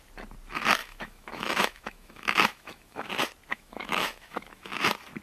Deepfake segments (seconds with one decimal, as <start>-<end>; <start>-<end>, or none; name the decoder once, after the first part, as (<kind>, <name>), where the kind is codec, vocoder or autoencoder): 0.8-3.1 (autoencoder, DAC-VAE); 3.5-4.8